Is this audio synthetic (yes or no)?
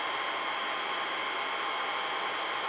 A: no